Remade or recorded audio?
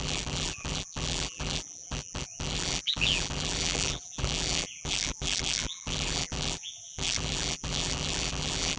remade